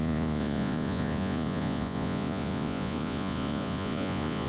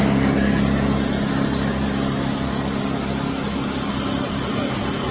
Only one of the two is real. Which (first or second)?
second